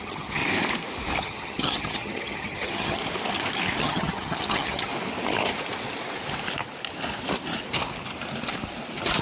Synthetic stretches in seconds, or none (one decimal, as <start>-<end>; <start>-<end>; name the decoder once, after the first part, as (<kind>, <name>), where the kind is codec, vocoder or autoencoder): 0.0-0.4 (vocoder, HiFi-GAN); 1.2-3.0; 3.8-4.9